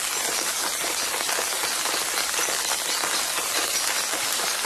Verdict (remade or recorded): recorded